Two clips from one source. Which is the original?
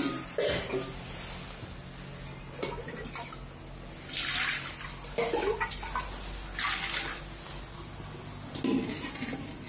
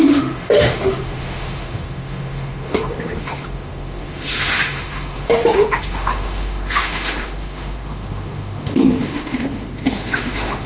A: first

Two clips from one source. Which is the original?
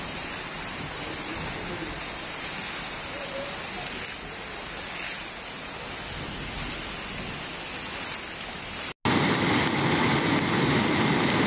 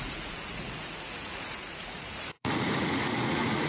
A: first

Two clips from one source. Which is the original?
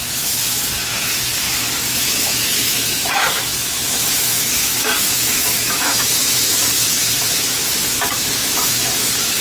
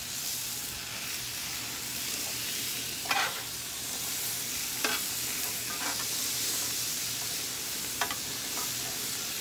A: second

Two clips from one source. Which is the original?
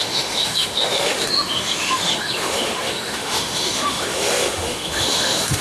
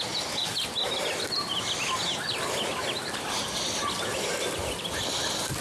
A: second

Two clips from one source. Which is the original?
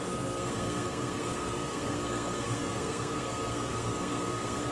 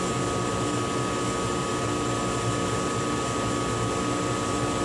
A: second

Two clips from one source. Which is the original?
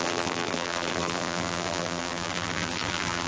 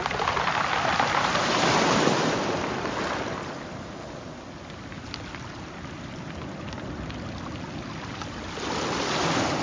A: second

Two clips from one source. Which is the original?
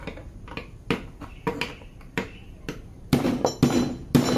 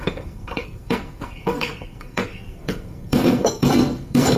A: first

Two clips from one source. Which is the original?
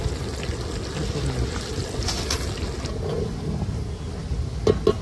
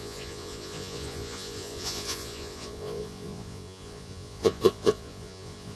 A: first